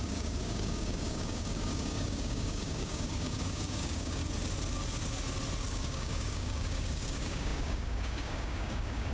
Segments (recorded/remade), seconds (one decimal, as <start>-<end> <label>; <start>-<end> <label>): 0.0-4.2 remade; 4.2-5.7 recorded; 5.7-9.1 remade